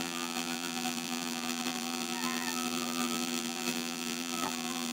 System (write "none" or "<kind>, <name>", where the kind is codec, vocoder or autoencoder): vocoder, BigVGAN v2